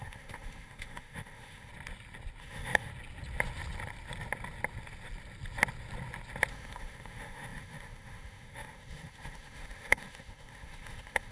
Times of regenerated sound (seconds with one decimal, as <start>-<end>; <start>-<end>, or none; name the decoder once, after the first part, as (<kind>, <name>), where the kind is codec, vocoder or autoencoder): 0.0-1.7 (autoencoder, DAC-VAE); 2.4-2.9; 6.5-11.3